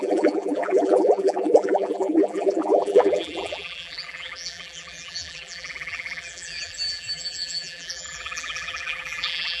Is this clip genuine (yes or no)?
no